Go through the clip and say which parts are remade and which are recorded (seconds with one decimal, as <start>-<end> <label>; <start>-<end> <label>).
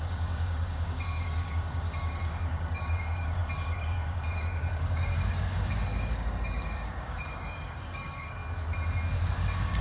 0.0-8.4 remade; 8.4-9.3 recorded; 9.3-9.8 remade